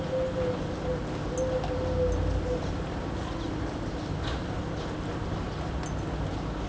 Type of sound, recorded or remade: recorded